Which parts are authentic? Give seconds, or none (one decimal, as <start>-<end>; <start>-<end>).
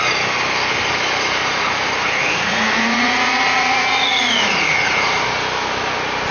0.0-1.4; 5.2-6.3